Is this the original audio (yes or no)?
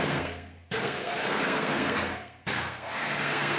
no